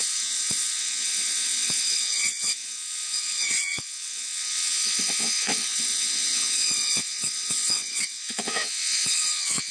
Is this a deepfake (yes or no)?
yes